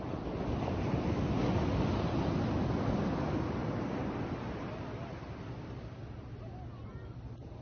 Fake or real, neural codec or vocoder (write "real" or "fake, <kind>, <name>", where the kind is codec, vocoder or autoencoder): real